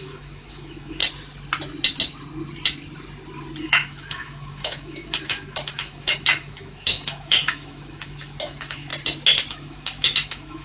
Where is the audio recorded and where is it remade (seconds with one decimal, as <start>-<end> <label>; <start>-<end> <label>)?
0.0-1.0 remade; 1.0-3.6 recorded; 3.6-8.9 remade; 8.9-9.5 recorded; 9.5-10.6 remade